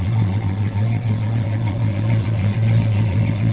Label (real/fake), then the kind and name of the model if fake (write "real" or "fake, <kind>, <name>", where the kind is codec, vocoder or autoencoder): fake, vocoder, Vocos